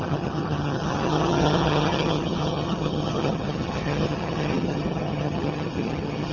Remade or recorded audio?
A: remade